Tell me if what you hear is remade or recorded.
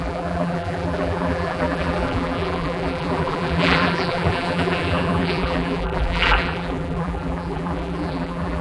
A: remade